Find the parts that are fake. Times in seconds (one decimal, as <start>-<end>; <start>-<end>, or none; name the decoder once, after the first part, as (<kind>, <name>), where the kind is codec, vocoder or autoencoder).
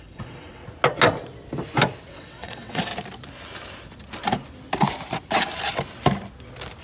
0.0-0.6 (vocoder, WaveNeXt); 2.1-2.9